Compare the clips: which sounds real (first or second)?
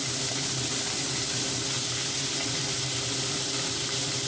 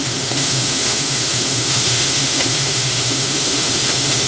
first